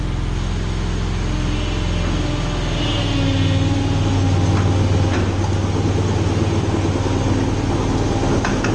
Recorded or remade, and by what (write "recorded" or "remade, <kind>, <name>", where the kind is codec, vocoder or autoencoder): recorded